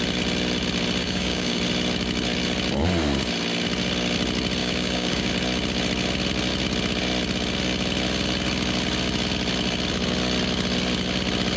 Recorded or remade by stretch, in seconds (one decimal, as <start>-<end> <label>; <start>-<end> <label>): 0.0-1.0 recorded; 1.0-1.6 remade; 1.6-4.6 recorded; 4.6-5.3 remade; 5.3-11.6 recorded